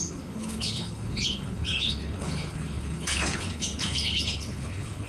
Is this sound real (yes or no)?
no